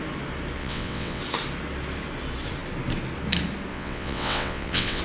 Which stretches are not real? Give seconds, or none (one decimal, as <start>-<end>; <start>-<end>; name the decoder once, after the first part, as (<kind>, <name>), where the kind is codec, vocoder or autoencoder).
0.6-1.2 (vocoder, WaveNeXt); 3.7-5.0